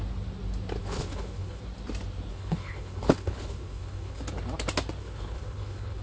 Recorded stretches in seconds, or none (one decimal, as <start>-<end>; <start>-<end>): 0.0-0.8; 1.6-2.3; 4.2-5.0